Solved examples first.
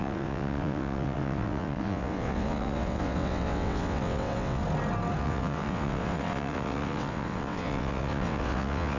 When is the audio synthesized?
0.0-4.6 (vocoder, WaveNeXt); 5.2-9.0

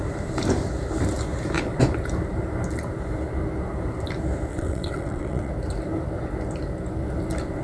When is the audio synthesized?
4.5-5.5 (vocoder, WaveNeXt)

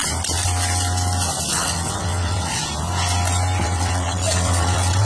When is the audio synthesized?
1.5-2.6 (vocoder, WaveNeXt); 3.6-5.0